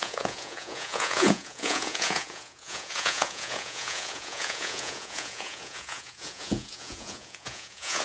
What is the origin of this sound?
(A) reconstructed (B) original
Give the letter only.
A